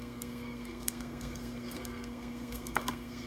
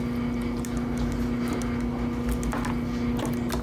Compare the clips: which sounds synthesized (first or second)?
first